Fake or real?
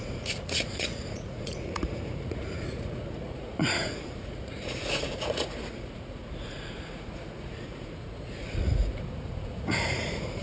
fake